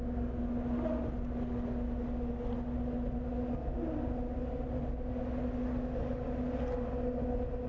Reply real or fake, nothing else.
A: real